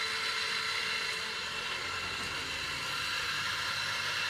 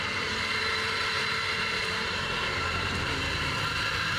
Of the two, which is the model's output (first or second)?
second